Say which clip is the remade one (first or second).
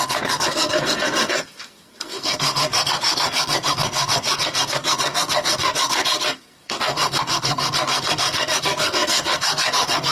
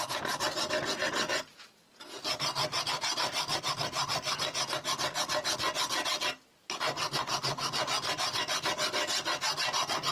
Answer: first